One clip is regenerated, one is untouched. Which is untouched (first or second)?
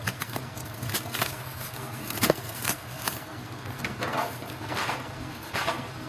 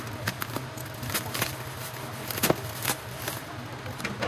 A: second